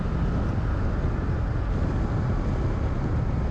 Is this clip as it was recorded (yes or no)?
yes